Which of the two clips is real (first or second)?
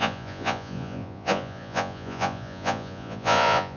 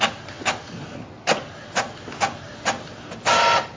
second